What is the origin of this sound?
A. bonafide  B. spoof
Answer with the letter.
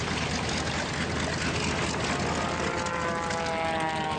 A